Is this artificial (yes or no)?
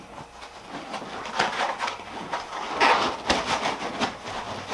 yes